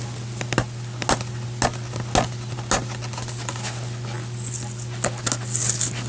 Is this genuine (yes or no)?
yes